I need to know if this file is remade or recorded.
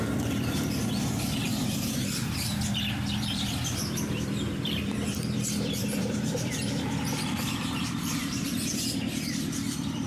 remade